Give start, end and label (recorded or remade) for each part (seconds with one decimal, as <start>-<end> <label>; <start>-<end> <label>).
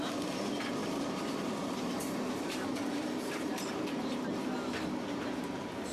0.0-0.8 recorded; 0.8-4.3 remade; 4.3-5.9 recorded